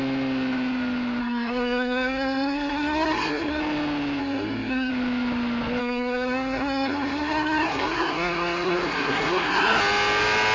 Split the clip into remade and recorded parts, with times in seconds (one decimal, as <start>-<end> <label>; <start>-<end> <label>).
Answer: 0.0-1.2 recorded; 1.2-3.6 remade; 3.6-4.2 recorded; 4.2-4.9 remade; 4.9-5.8 recorded; 5.8-9.8 remade; 9.8-10.5 recorded